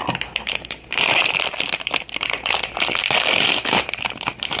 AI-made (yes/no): yes